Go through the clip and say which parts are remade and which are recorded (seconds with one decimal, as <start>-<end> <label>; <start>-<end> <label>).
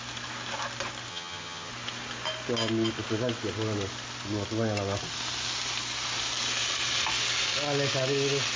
0.0-1.1 recorded; 1.1-1.7 remade; 1.7-8.6 recorded